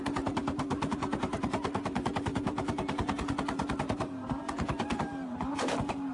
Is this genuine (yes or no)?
no